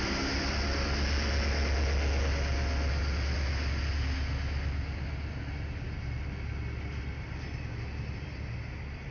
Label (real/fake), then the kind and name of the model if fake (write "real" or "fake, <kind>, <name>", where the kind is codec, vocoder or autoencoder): real